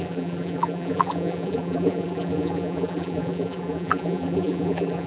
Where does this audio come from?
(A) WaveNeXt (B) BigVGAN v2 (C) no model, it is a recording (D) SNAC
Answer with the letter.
B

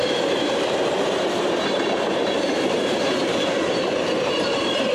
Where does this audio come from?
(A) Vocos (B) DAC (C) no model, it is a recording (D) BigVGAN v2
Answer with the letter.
D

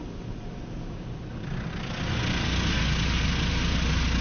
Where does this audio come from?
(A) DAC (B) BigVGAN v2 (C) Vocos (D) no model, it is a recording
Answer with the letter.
D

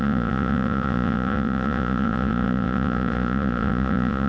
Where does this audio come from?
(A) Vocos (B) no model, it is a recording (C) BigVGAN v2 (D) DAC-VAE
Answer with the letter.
A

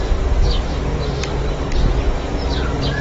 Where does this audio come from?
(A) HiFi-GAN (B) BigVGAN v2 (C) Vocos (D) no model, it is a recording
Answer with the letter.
B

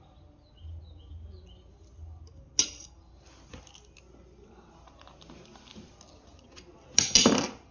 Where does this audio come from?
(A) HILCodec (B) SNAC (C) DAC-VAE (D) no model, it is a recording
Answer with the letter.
D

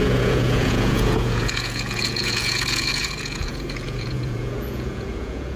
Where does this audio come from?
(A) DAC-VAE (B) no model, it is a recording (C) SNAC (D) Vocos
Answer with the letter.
D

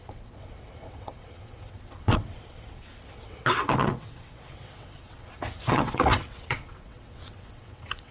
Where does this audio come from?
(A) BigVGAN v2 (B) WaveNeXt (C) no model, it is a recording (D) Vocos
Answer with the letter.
B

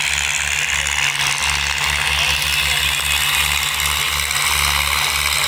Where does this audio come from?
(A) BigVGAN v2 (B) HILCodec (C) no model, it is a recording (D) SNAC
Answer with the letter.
C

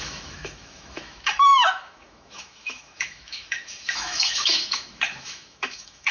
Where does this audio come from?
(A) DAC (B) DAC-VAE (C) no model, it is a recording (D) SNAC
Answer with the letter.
B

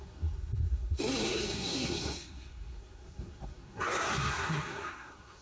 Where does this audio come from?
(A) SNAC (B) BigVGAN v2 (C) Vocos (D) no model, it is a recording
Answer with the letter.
A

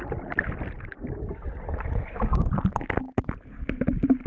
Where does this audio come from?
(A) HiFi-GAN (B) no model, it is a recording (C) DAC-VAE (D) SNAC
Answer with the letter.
B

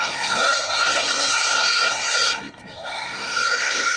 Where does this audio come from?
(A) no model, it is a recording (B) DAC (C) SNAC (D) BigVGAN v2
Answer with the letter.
C